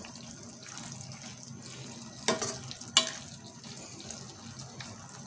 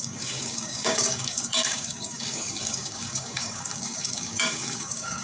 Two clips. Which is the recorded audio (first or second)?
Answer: first